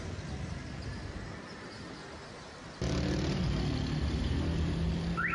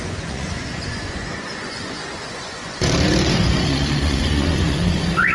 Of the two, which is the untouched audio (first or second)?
first